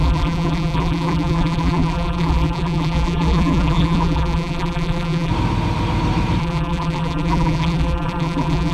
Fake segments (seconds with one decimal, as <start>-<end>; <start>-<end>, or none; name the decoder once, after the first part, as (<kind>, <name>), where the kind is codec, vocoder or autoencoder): 0.0-5.3 (vocoder, BigVGAN v2); 6.4-8.7